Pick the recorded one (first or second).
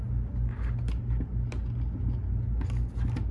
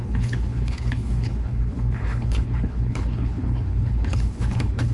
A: first